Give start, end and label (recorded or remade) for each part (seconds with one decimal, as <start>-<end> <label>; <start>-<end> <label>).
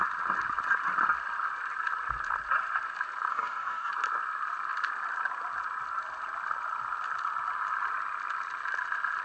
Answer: 0.0-3.3 recorded; 3.3-3.9 remade; 3.9-9.2 recorded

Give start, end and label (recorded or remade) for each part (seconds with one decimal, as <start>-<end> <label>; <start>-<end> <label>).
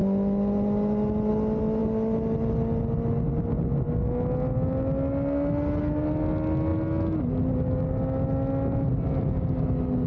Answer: 0.0-10.1 recorded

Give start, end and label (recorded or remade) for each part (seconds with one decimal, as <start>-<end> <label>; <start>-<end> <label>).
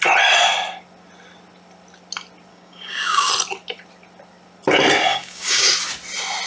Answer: 0.0-2.5 recorded; 2.5-3.3 remade; 3.3-5.1 recorded; 5.1-5.7 remade; 5.7-6.5 recorded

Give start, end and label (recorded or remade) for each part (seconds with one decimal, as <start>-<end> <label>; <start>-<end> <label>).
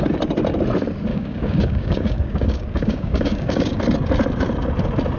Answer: 0.0-1.1 recorded; 1.1-3.8 remade; 3.8-5.2 recorded